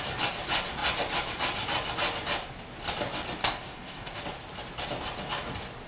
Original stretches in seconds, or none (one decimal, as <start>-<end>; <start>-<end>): 0.0-3.4; 4.2-5.9